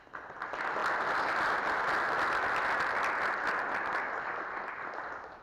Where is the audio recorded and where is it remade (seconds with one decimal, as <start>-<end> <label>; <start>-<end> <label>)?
0.0-5.4 recorded